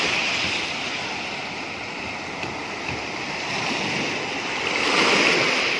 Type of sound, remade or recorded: remade